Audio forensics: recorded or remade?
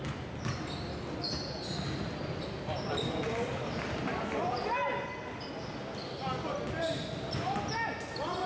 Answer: recorded